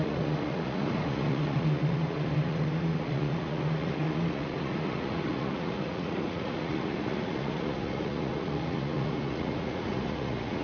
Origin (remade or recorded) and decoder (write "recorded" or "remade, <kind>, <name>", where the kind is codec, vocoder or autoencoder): remade, vocoder, Vocos